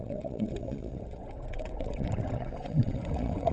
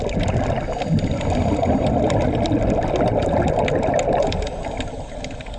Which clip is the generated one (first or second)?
first